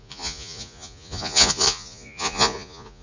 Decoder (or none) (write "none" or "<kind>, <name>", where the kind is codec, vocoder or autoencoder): vocoder, Vocos